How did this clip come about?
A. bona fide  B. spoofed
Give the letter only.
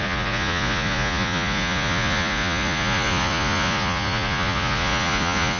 B